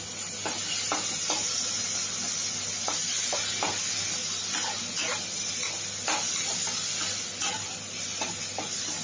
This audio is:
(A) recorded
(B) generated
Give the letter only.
A